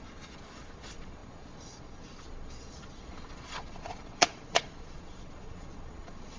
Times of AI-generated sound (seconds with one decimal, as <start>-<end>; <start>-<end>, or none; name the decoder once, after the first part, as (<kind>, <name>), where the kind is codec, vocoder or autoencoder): 0.0-6.4 (vocoder, Vocos)